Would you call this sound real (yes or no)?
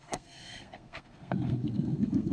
no